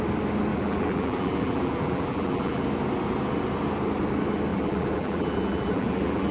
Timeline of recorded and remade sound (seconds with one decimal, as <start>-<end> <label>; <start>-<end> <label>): 0.0-0.5 recorded; 0.5-2.6 remade; 2.6-4.5 recorded; 4.5-6.3 remade